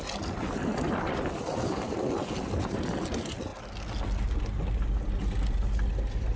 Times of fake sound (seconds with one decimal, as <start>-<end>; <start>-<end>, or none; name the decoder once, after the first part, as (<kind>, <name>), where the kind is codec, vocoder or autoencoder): none